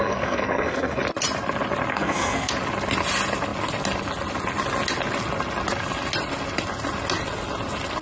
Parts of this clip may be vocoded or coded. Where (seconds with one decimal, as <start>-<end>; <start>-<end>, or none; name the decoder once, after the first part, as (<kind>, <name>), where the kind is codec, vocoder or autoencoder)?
0.0-1.0 (codec, SNAC); 1.9-2.5